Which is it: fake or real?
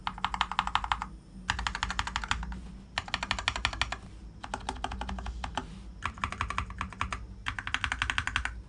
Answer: real